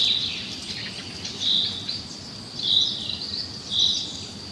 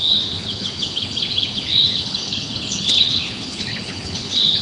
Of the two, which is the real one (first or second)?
first